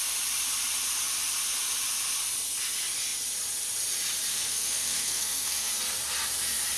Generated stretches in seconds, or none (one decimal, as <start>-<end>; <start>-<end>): 4.3-5.7